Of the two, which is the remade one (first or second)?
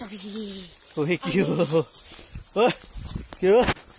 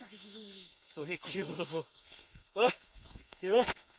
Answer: second